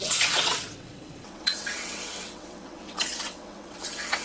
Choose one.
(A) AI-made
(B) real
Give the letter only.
A